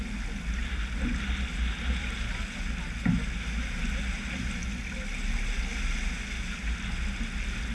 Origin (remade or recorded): recorded